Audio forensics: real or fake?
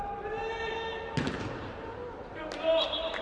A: real